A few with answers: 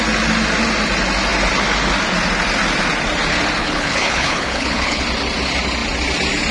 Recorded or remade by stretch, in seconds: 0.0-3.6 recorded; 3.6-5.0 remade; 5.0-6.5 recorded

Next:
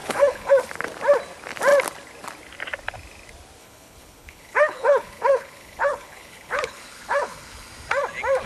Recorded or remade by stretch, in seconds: 0.0-0.5 remade; 0.5-3.6 recorded; 3.6-7.7 remade; 7.7-8.5 recorded

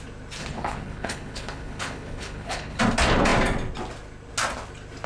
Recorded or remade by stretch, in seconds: 0.0-0.4 recorded; 0.4-2.8 remade; 2.8-5.1 recorded

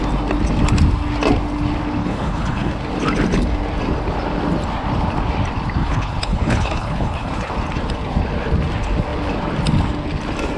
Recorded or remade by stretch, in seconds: 0.0-2.0 recorded; 2.0-2.7 remade; 2.7-5.8 recorded; 5.8-7.5 remade; 7.5-10.6 recorded

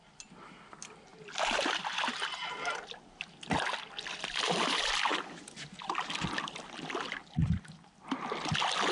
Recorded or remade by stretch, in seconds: 0.0-8.9 recorded

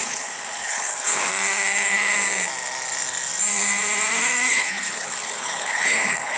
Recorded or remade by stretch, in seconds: 0.0-1.3 remade; 1.3-4.5 recorded; 4.5-6.4 remade

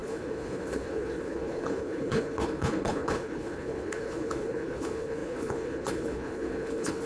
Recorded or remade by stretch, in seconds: 0.0-7.1 remade